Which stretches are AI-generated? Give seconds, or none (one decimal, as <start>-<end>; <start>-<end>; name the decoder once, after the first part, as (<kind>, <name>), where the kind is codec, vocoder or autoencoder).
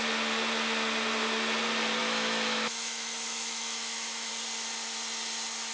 2.0-4.3 (autoencoder, DAC-VAE)